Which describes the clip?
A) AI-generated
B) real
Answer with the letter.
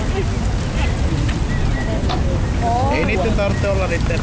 B